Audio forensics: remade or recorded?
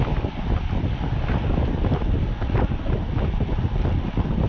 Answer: recorded